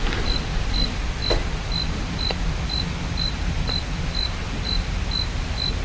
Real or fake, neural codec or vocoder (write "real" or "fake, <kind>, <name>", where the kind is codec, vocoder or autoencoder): real